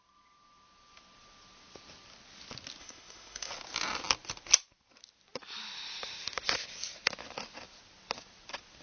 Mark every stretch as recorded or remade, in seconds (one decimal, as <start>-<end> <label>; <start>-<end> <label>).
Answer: 0.0-2.8 recorded; 2.8-3.5 remade; 3.5-8.8 recorded